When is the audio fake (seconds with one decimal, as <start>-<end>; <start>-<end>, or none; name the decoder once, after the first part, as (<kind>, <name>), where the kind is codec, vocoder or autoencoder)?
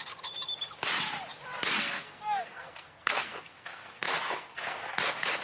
1.8-5.0 (codec, SNAC)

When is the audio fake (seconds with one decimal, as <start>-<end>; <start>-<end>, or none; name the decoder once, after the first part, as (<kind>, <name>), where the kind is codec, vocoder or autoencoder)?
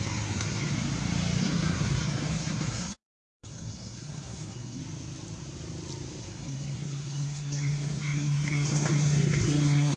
0.0-0.7 (codec, SNAC); 1.4-4.8; 6.2-10.0